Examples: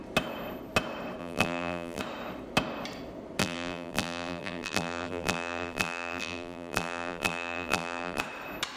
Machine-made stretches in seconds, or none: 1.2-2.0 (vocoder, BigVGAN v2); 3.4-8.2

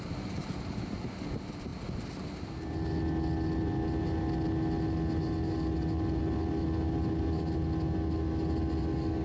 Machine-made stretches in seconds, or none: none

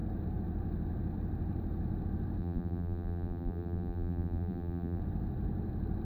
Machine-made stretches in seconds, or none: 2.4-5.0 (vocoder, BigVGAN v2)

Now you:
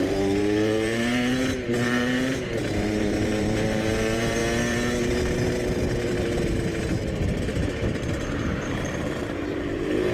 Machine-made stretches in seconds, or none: 0.0-4.4 (vocoder, BigVGAN v2); 6.9-10.1

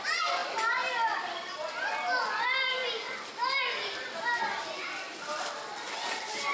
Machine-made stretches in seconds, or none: 0.4-1.5 (vocoder, BigVGAN v2)